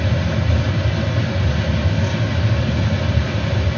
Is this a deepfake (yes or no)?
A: no